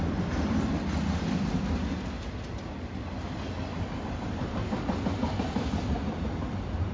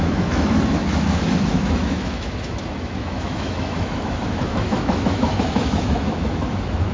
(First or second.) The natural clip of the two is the first